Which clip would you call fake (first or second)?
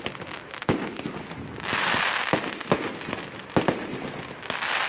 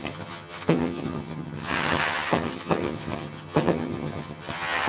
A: second